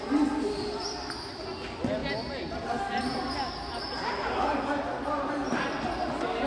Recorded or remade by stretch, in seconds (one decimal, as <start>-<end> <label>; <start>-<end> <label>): 0.0-6.5 recorded